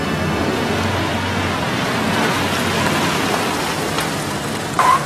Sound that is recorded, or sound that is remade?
recorded